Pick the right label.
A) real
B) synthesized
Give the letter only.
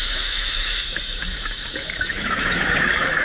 B